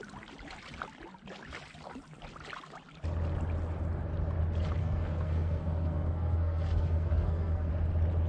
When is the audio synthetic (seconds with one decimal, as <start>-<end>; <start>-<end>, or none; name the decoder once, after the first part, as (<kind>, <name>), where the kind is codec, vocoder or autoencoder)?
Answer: 4.8-7.7 (codec, SNAC)

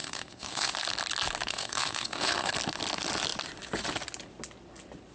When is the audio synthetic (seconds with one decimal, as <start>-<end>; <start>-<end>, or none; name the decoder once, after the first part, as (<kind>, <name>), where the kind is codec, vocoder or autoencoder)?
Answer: 0.0-0.7 (codec, SNAC); 1.5-2.5

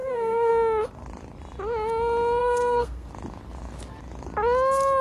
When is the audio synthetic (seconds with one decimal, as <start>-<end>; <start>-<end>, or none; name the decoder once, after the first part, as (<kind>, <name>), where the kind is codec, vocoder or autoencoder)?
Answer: 0.0-0.5 (codec, SNAC); 2.4-3.1

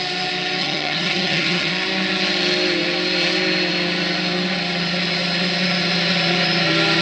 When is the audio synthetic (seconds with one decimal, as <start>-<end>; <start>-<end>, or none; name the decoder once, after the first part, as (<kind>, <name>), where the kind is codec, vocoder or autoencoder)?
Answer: 0.6-1.7 (vocoder, HiFi-GAN)